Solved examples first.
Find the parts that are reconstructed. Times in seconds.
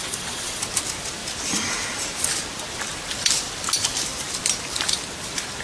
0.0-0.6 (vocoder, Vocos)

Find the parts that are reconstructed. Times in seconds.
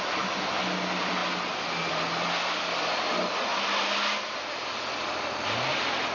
none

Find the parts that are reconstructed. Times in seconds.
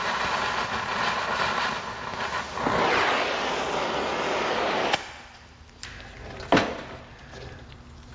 none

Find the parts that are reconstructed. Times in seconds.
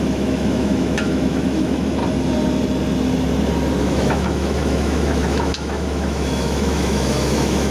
0.0-2.0 (autoencoder, DAC-VAE); 3.8-7.7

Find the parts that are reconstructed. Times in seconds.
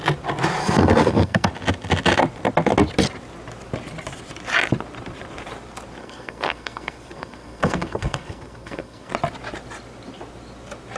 0.6-1.5 (codec, SNAC); 6.0-9.1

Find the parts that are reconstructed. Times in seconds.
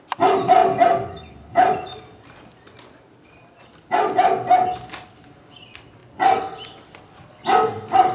none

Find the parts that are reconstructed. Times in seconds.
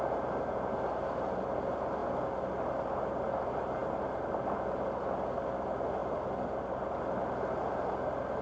none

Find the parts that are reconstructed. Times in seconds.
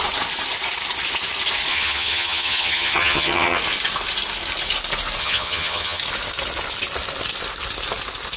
1.7-3.6 (vocoder, HiFi-GAN); 5.2-6.0